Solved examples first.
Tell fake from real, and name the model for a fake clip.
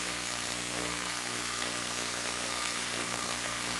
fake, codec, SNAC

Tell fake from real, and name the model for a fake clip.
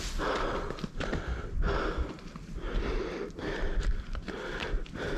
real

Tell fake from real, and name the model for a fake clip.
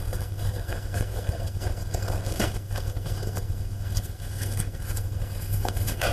fake, codec, SNAC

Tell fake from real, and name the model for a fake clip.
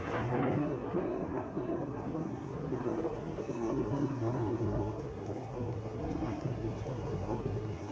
fake, codec, SNAC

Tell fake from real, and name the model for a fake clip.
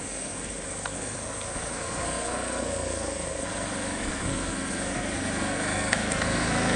fake, codec, SNAC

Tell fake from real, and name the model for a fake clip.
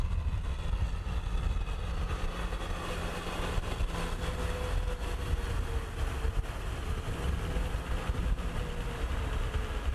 real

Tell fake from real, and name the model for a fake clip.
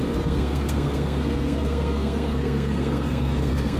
fake, codec, SNAC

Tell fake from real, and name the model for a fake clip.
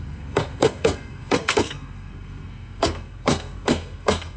fake, codec, SNAC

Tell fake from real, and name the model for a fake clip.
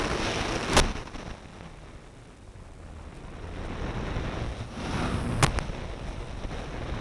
real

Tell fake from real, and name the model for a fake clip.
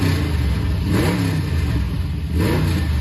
real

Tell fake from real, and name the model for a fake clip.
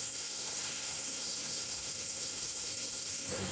fake, codec, SNAC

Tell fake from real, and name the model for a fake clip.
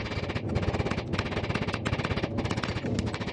real